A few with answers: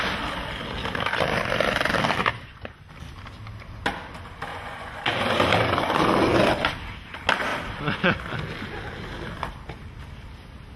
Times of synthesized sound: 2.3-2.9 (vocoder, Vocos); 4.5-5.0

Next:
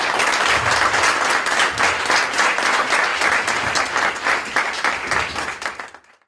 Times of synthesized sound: none